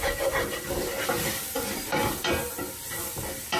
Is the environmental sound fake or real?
real